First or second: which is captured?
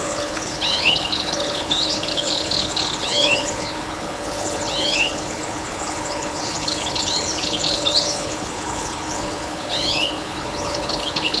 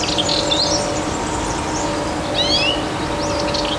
second